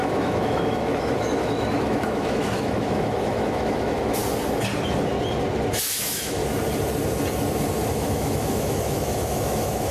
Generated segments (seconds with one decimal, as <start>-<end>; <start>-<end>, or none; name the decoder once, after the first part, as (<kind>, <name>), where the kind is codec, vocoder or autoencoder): 0.0-4.2 (autoencoder, DAC-VAE); 5.8-6.4; 7.9-9.9